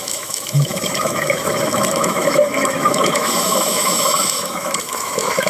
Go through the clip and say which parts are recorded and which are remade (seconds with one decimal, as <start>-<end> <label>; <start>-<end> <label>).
0.0-5.5 remade